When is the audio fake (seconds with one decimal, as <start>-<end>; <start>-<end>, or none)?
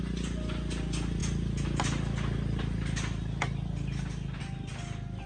none